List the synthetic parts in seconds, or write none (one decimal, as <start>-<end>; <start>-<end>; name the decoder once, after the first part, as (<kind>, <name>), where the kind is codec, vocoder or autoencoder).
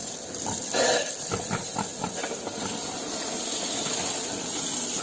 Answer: none